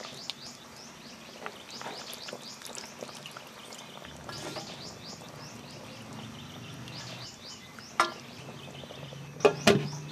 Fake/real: real